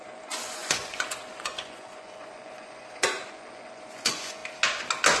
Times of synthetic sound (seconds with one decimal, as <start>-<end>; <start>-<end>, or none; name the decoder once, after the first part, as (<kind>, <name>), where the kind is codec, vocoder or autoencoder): 0.0-4.4 (vocoder, Vocos)